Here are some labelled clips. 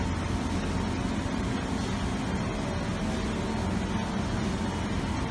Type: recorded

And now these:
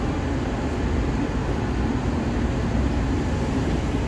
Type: recorded